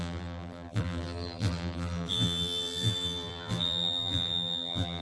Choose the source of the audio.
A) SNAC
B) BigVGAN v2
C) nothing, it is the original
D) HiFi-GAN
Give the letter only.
B